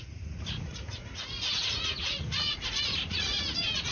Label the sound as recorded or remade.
remade